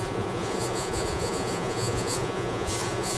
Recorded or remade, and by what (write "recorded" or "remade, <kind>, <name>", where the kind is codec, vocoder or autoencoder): remade, vocoder, Vocos